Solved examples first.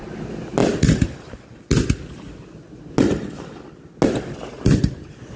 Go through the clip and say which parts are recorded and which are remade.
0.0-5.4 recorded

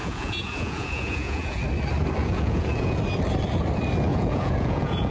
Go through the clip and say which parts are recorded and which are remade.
0.0-1.6 remade; 1.6-2.2 recorded; 2.2-3.0 remade; 3.0-4.1 recorded; 4.1-5.1 remade

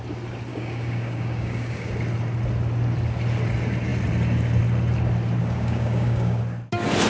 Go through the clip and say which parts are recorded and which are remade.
0.0-0.5 recorded; 0.5-1.9 remade; 1.9-5.4 recorded; 5.4-6.4 remade; 6.4-7.1 recorded

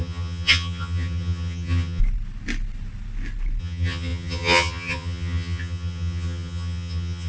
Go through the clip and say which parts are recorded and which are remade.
0.0-2.0 remade; 2.0-3.6 recorded; 3.6-7.3 remade